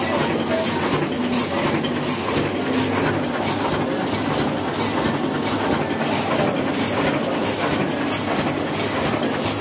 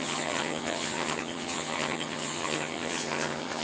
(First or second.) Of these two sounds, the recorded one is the first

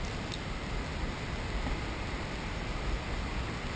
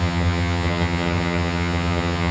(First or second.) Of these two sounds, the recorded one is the first